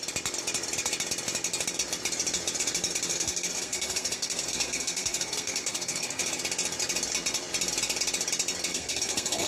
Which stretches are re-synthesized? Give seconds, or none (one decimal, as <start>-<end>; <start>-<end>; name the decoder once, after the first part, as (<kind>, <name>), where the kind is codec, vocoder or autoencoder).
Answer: 3.1-6.4 (codec, SNAC); 8.7-9.5